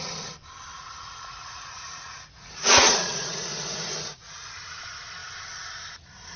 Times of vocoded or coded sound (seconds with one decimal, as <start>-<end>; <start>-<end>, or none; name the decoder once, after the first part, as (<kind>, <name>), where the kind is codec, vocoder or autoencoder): 0.7-4.5 (vocoder, Vocos)